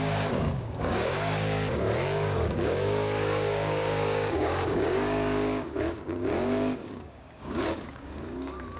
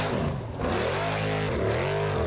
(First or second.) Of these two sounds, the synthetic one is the first